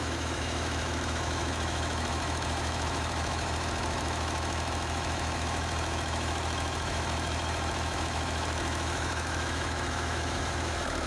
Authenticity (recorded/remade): remade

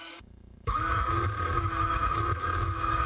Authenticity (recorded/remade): remade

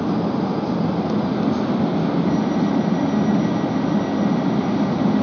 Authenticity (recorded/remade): recorded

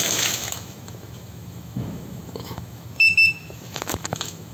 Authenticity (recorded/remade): remade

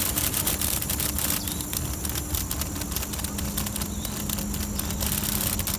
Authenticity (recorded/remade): recorded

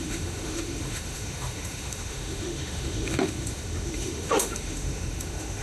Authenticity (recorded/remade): remade